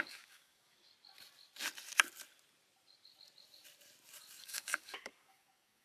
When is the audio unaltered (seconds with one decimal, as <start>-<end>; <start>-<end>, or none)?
0.9-4.4